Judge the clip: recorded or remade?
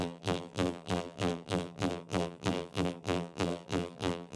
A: remade